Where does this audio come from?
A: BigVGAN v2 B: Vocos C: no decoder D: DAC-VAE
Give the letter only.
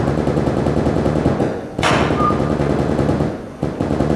B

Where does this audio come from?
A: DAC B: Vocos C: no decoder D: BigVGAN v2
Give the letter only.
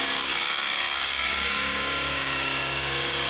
A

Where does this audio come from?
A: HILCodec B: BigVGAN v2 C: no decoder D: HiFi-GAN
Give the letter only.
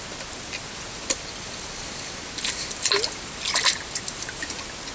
C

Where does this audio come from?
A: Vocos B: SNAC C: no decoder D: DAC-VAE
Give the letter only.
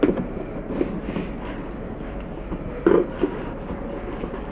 C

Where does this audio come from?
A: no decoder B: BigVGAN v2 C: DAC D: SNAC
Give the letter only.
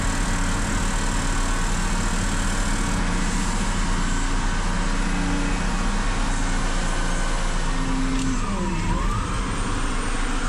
A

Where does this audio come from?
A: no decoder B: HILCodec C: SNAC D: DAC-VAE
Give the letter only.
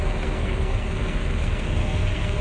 C